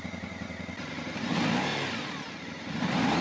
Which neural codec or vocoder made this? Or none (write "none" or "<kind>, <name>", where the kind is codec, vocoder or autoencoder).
none